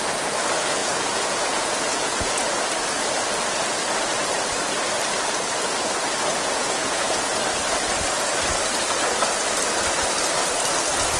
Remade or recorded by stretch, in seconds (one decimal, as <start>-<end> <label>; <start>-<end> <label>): 0.0-0.8 recorded; 0.8-2.5 remade; 2.5-6.3 recorded; 6.3-7.3 remade; 7.3-11.2 recorded